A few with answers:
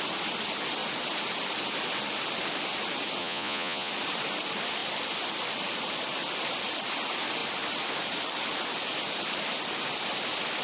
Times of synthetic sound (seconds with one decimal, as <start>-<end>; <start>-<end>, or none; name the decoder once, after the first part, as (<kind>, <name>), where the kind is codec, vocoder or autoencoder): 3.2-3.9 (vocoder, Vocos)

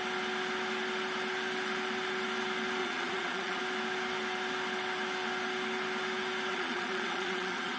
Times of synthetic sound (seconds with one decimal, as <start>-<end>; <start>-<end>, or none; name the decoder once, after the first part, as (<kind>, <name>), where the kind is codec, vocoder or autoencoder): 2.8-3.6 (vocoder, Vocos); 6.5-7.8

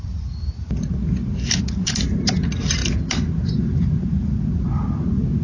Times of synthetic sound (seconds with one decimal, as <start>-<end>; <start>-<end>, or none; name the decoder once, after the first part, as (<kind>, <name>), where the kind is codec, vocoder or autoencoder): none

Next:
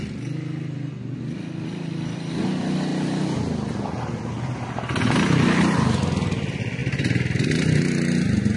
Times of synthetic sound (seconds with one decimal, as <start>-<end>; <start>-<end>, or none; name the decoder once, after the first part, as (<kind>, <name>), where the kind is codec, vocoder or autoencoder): none

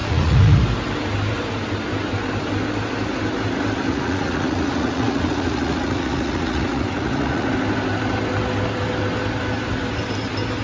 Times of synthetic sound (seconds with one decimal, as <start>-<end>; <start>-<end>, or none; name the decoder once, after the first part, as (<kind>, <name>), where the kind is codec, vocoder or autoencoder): 0.0-0.6 (vocoder, Vocos); 3.9-7.5

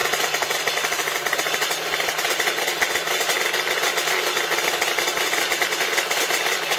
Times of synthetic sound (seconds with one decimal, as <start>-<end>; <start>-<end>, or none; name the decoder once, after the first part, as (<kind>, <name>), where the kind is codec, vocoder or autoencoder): none